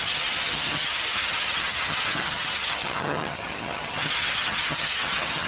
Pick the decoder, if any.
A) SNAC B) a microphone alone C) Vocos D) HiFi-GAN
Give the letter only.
D